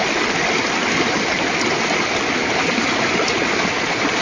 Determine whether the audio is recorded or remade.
recorded